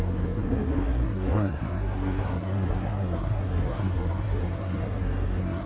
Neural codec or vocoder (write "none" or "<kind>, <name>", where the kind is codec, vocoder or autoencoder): codec, SNAC